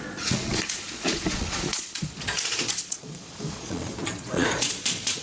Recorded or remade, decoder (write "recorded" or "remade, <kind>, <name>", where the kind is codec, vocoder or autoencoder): remade, vocoder, Vocos